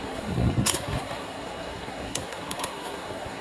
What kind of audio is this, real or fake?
fake